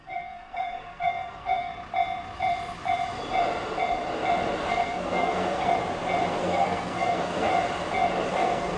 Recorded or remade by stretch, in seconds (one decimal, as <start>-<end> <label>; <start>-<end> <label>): 0.0-1.7 remade; 1.7-4.6 recorded; 4.6-5.7 remade; 5.7-6.3 recorded; 6.3-7.5 remade; 7.5-8.3 recorded; 8.3-8.8 remade